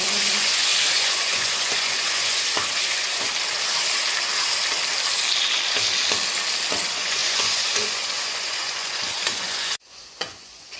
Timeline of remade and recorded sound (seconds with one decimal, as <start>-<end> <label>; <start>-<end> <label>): 0.0-3.3 remade; 3.3-6.8 recorded; 6.8-10.8 remade

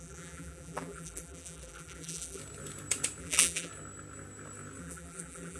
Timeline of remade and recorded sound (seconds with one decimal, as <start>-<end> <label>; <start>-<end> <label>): 0.0-2.4 remade; 2.4-3.2 recorded; 3.2-3.7 remade; 3.7-4.8 recorded; 4.8-5.6 remade

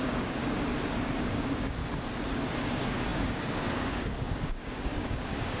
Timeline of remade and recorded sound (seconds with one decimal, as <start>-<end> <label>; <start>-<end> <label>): 0.0-0.4 remade; 0.4-1.2 recorded; 1.2-1.8 remade; 1.8-2.7 recorded; 2.7-5.6 remade

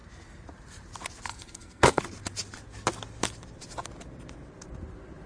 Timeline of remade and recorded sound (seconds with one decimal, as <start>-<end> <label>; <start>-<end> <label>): 0.0-1.3 recorded; 1.3-2.0 remade; 2.0-5.3 recorded

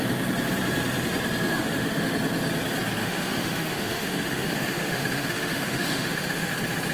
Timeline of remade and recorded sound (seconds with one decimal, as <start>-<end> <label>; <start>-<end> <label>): 0.0-1.5 recorded; 1.5-2.1 remade; 2.1-3.0 recorded; 3.0-6.5 remade; 6.5-6.9 recorded

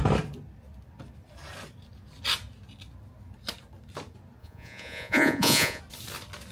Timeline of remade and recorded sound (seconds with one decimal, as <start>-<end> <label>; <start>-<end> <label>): 0.0-4.4 recorded; 4.4-5.8 remade; 5.8-6.5 recorded

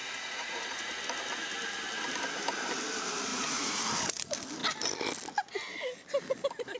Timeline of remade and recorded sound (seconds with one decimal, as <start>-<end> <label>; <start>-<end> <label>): 0.0-0.9 remade; 0.9-3.3 recorded; 3.3-3.8 remade; 3.8-6.8 recorded